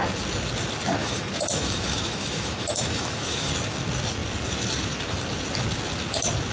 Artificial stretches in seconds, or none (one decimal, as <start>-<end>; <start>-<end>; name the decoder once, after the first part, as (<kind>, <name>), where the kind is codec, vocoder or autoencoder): 1.0-3.5 (autoencoder, DAC-VAE)